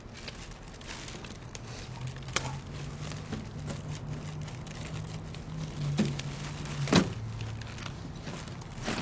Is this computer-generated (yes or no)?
no